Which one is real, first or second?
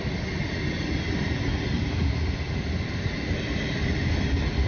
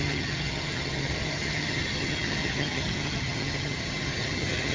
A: first